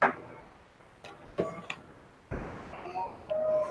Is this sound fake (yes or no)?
no